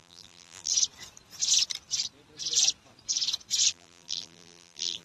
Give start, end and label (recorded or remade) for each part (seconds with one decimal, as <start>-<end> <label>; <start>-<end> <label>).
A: 0.0-0.7 remade; 0.7-3.7 recorded; 3.7-5.0 remade